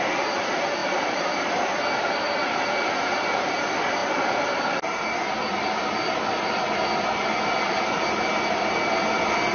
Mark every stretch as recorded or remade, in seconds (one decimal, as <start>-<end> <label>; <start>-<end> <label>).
0.0-0.8 recorded; 0.8-1.8 remade; 1.8-4.0 recorded; 4.0-5.9 remade; 5.9-9.5 recorded